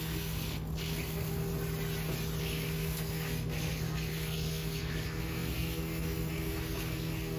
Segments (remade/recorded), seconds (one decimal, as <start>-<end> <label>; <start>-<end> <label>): 0.0-1.5 remade; 1.5-2.4 recorded; 2.4-7.4 remade